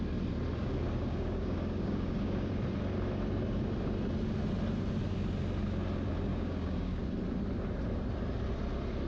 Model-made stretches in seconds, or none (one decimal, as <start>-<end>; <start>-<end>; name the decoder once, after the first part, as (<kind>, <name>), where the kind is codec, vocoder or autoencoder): 0.6-2.5 (codec, DAC); 6.3-7.0